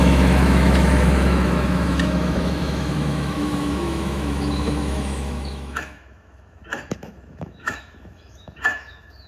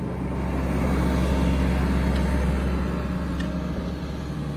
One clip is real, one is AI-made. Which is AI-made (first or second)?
first